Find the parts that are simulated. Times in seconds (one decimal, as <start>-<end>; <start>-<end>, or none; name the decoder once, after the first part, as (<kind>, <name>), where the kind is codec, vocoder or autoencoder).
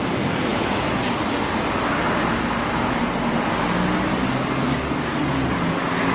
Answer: 4.1-6.1 (codec, DAC)